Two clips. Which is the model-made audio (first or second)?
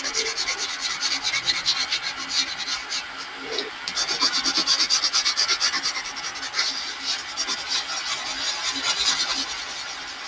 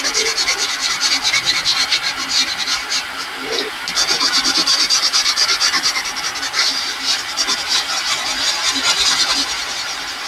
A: second